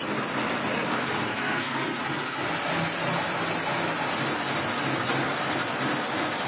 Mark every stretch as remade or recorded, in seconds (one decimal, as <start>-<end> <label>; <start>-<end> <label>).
0.0-1.3 recorded; 1.3-2.0 remade; 2.0-6.5 recorded